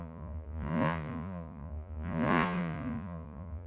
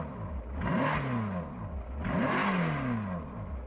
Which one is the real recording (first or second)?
second